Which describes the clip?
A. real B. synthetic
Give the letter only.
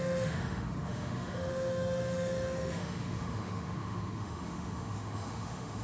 B